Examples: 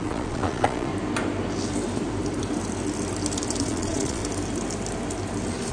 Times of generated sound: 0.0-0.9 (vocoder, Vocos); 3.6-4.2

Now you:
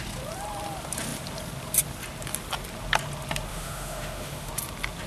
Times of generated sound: 3.5-4.5 (autoencoder, DAC-VAE)

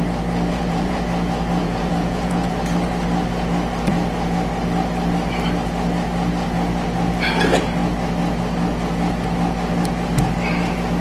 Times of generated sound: 0.5-1.0 (vocoder, Vocos); 1.6-2.5

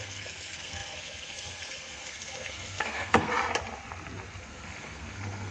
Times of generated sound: 0.0-3.3 (codec, SNAC); 4.4-5.5

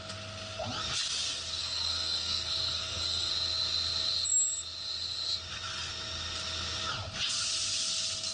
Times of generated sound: 1.6-3.3 (codec, SNAC)

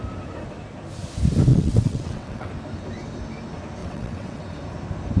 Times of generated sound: 1.5-2.5 (vocoder, WaveNeXt); 3.8-4.4

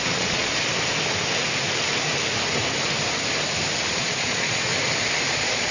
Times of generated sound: 0.0-0.5 (vocoder, Vocos); 3.9-4.7; 5.3-5.7